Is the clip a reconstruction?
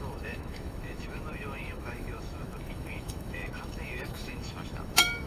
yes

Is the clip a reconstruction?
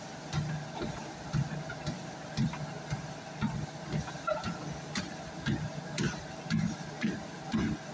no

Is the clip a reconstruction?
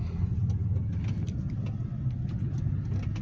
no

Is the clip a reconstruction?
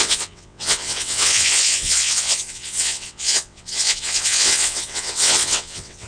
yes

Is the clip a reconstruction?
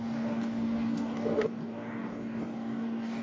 yes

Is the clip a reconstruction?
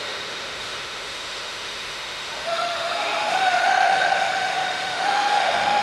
yes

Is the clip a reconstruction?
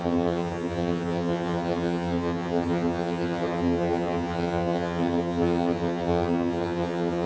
yes